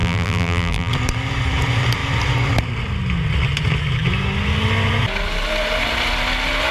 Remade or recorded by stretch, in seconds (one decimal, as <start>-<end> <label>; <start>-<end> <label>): 0.0-0.9 remade; 0.9-6.7 recorded